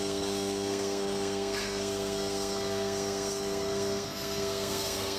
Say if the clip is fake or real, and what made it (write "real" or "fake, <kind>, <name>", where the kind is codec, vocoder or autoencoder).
fake, codec, SNAC